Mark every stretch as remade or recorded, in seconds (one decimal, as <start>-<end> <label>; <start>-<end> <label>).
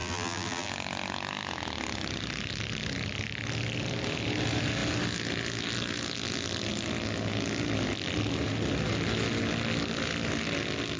0.0-0.7 remade; 0.7-11.0 recorded